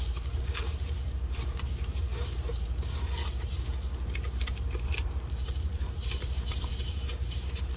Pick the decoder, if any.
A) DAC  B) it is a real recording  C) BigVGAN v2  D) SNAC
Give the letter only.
C